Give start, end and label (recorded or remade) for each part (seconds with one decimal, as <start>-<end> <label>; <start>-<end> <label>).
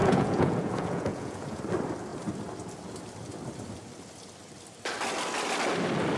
0.0-1.6 remade; 1.6-6.2 recorded